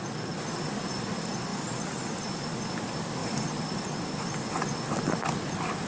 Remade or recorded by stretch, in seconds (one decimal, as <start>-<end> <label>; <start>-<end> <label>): 0.0-5.9 recorded